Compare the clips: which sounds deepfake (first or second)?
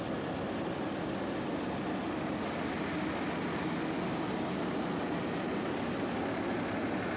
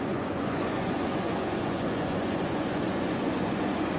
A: second